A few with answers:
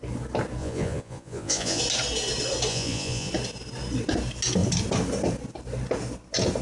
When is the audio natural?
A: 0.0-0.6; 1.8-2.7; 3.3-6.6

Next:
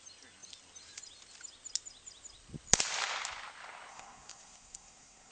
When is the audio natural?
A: 0.0-3.9

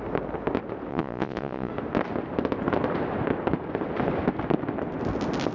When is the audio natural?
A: 0.0-0.9; 1.7-5.5

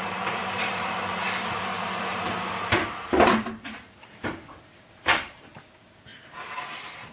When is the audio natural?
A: none